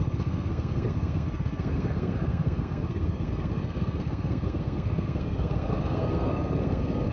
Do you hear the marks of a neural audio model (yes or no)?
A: yes